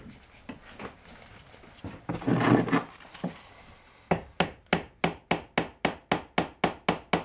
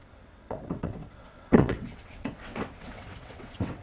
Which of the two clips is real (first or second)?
first